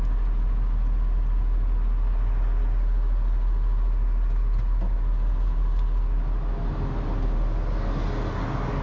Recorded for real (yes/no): yes